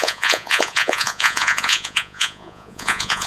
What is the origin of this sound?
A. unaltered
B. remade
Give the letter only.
B